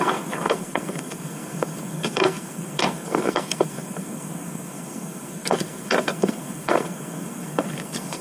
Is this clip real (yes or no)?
no